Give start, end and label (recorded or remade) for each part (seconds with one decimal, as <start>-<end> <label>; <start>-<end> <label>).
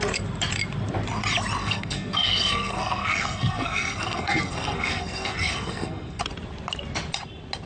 0.0-1.6 recorded; 1.6-6.2 remade; 6.2-7.7 recorded